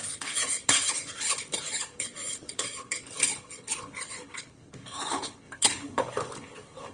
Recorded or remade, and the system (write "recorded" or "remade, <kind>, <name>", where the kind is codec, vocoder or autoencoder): remade, codec, HILCodec